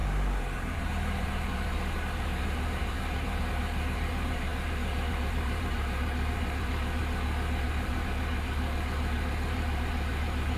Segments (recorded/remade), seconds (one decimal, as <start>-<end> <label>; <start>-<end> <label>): 0.0-7.0 remade; 7.0-7.6 recorded; 7.6-10.6 remade